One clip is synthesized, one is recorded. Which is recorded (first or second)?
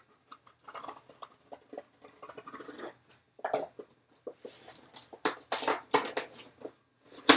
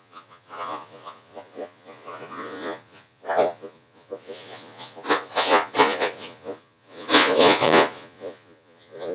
first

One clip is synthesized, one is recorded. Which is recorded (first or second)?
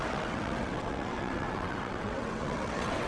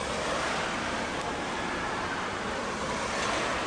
second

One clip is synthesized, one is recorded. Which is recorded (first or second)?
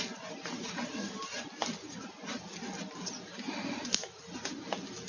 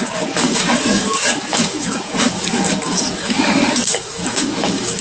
first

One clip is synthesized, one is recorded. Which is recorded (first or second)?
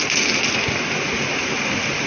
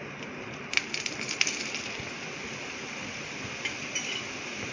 first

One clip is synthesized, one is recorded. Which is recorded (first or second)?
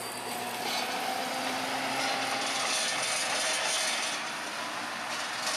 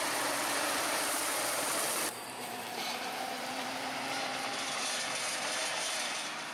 first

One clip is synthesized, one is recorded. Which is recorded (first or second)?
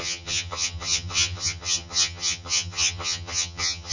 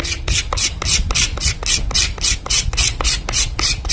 second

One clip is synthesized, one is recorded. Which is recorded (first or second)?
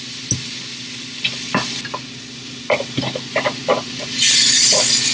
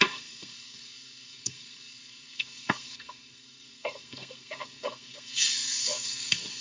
first